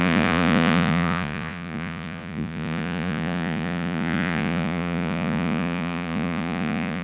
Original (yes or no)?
no